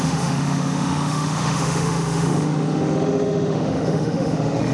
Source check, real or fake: fake